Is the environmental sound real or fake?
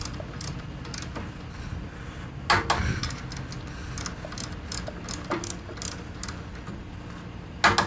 real